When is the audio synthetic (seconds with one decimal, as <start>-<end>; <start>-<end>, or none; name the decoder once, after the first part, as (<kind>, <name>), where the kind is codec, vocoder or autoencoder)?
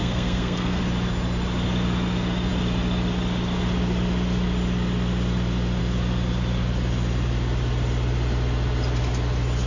0.0-0.8 (codec, SNAC)